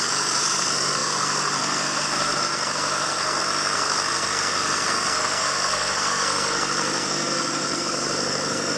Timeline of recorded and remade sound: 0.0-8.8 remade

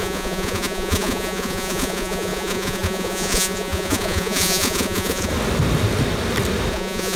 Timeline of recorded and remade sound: 0.0-5.3 remade; 5.3-6.7 recorded; 6.7-7.2 remade

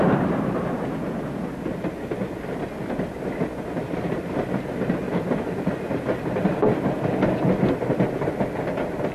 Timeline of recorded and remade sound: 0.0-9.1 recorded

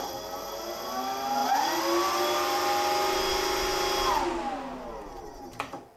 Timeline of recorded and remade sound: 0.0-6.0 recorded

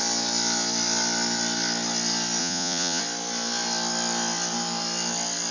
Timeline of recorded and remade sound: 0.0-2.4 recorded; 2.4-3.0 remade; 3.0-5.5 recorded

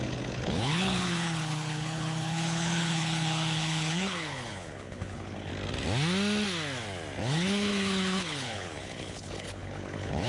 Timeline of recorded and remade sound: 0.0-5.5 remade; 5.5-7.2 recorded; 7.2-10.3 remade

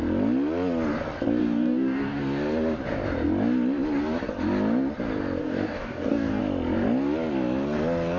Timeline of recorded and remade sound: 0.0-1.4 recorded; 1.4-2.2 remade; 2.2-5.4 recorded; 5.4-6.4 remade; 6.4-8.2 recorded